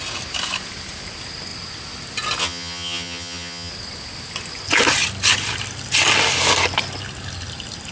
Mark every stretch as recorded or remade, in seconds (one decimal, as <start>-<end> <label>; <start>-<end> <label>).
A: 0.0-2.4 recorded; 2.4-3.7 remade; 3.7-7.9 recorded